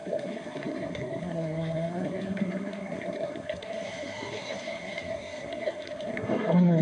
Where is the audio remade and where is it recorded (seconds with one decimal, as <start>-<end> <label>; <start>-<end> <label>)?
0.0-6.8 remade